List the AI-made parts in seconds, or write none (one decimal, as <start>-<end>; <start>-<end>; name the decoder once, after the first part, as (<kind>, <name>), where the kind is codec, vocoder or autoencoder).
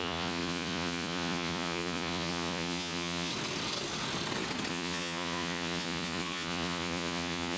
0.0-3.3 (vocoder, Vocos); 4.7-7.6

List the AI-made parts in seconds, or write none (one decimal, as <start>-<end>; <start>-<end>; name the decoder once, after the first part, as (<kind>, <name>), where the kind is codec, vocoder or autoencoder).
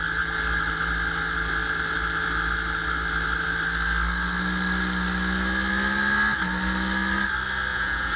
7.7-8.2 (vocoder, Vocos)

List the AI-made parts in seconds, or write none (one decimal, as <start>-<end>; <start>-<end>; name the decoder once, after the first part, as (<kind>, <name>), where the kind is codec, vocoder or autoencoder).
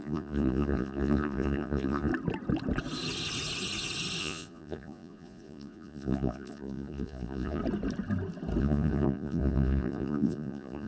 0.0-2.1 (vocoder, Vocos); 4.2-7.6; 8.6-10.9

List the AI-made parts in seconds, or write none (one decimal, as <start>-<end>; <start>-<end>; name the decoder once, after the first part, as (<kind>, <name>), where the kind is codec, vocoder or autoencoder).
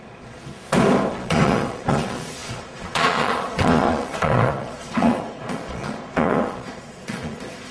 0.0-0.4 (vocoder, Vocos); 1.1-7.7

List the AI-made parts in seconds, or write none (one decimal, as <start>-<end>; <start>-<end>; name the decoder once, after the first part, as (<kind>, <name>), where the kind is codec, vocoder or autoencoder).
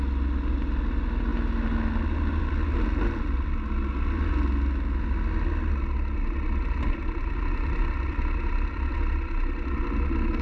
none